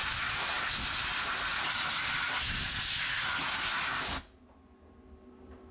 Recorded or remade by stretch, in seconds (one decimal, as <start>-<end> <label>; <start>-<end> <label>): 0.0-5.7 recorded